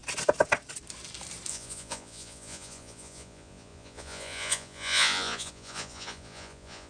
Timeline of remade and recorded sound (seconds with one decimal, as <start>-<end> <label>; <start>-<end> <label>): 0.0-1.5 recorded; 1.5-6.9 remade